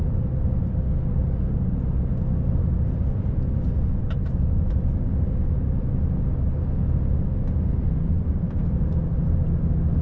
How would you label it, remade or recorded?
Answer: recorded